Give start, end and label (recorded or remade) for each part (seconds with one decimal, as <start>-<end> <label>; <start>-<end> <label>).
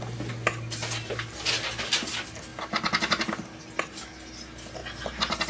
0.0-5.5 recorded